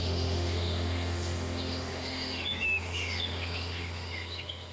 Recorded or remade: remade